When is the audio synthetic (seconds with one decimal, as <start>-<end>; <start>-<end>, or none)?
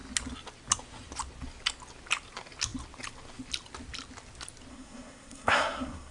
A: 4.7-6.1